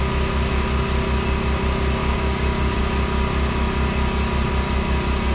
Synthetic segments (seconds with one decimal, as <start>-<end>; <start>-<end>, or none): 2.0-2.8